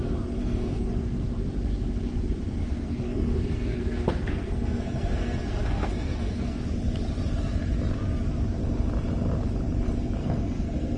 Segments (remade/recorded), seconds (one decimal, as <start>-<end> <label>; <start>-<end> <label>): 0.0-0.4 recorded; 0.4-1.4 remade; 1.4-2.6 recorded; 2.6-6.6 remade; 6.6-10.2 recorded; 10.2-11.0 remade